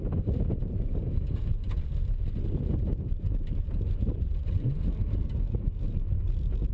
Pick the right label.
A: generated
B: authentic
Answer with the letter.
A